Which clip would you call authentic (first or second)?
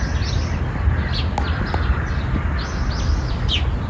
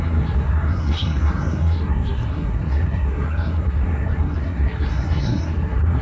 first